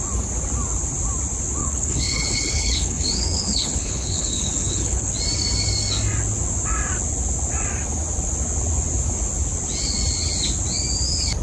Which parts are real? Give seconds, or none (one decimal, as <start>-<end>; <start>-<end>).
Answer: 0.0-1.6; 5.1-11.4